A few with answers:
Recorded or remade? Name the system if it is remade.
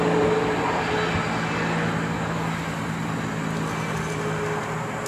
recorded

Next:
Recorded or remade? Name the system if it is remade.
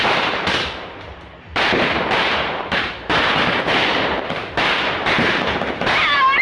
remade, vocoder, BigVGAN v2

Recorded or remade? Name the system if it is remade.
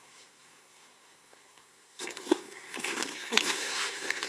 remade, codec, SNAC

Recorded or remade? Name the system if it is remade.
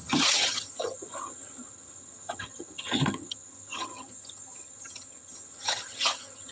remade, vocoder, HiFi-GAN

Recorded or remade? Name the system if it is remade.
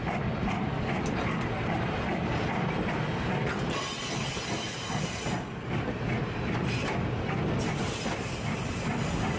recorded